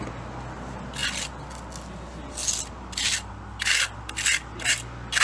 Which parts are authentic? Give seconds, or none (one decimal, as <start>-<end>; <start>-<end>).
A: 0.0-5.2